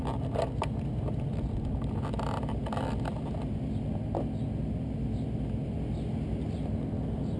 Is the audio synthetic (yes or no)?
no